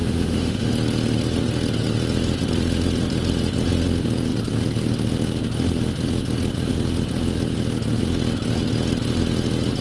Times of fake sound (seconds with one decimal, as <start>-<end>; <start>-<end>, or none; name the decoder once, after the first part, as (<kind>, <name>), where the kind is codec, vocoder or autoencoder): 0.0-0.7 (autoencoder, DAC-VAE)